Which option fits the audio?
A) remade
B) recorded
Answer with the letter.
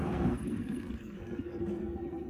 A